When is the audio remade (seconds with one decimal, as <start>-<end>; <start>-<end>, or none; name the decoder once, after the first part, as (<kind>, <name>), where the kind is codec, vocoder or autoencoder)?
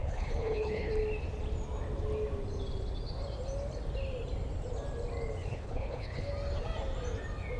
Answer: 0.0-0.9 (codec, HILCodec); 5.4-6.3